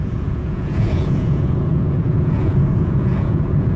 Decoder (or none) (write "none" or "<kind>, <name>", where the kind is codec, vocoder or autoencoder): vocoder, Vocos